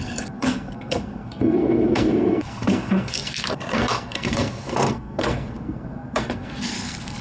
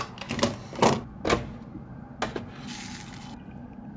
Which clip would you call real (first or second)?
second